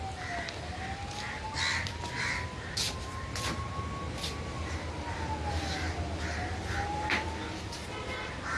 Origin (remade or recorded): recorded